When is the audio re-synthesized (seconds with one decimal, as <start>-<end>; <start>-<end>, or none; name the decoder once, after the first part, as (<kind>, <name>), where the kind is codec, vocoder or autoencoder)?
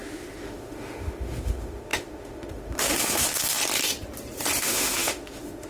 0.0-3.6 (autoencoder, DAC-VAE); 4.6-5.7